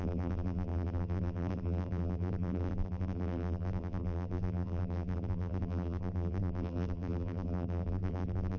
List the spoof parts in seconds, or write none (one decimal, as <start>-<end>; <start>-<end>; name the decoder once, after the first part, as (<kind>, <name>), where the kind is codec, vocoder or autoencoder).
0.0-8.6 (vocoder, BigVGAN v2)